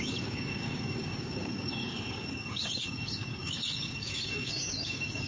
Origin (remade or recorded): remade